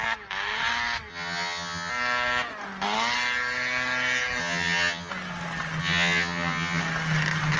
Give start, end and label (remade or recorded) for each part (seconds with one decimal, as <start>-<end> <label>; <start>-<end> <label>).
0.0-1.1 recorded; 1.1-1.9 remade; 1.9-4.4 recorded; 4.4-5.1 remade; 5.1-5.8 recorded; 5.8-6.8 remade; 6.8-7.6 recorded